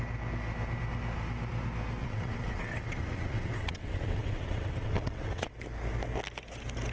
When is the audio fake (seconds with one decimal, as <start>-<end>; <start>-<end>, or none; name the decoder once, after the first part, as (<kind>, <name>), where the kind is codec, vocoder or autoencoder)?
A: 2.0-5.5 (vocoder, WaveNeXt)